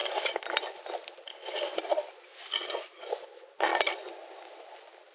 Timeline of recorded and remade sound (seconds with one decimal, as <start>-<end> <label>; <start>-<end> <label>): 0.0-5.1 recorded